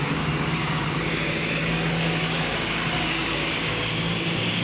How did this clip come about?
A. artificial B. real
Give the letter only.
A